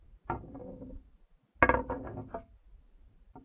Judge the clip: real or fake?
real